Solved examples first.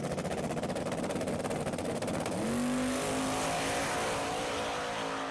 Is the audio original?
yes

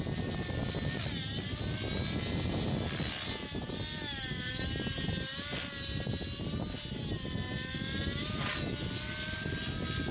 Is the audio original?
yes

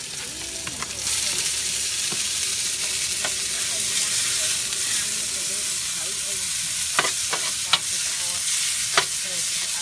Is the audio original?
yes